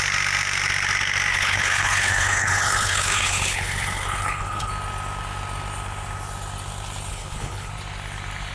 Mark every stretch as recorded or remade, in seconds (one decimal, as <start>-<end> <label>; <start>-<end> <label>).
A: 0.0-1.3 recorded; 1.3-4.7 remade; 4.7-7.1 recorded; 7.1-7.7 remade; 7.7-8.5 recorded